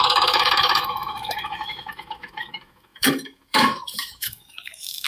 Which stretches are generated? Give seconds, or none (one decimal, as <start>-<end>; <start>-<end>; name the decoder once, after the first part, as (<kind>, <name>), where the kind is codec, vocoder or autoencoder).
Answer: 0.0-5.1 (autoencoder, DAC-VAE)